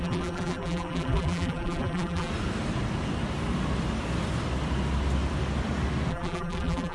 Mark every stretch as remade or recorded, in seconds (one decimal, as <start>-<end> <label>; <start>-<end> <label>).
0.0-2.3 remade; 2.3-6.1 recorded; 6.1-6.9 remade